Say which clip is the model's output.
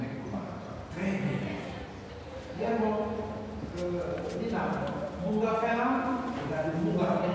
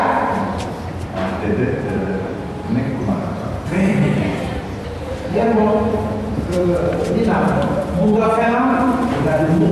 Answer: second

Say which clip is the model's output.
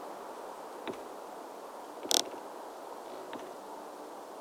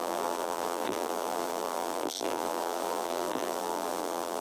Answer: second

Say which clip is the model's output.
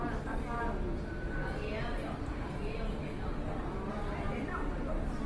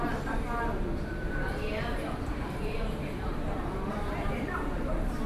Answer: second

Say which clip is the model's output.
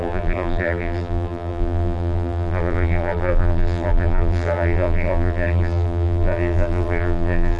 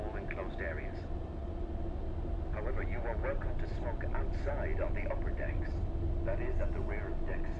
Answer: first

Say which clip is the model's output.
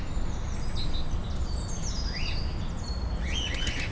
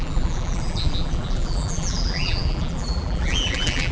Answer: second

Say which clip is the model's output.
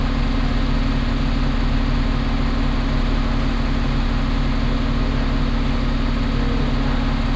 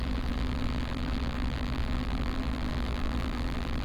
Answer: second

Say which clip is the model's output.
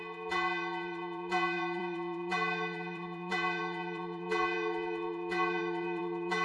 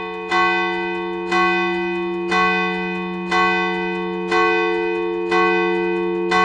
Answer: first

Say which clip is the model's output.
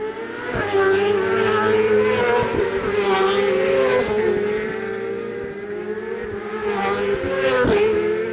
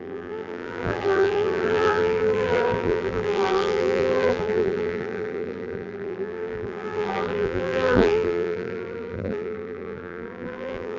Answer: second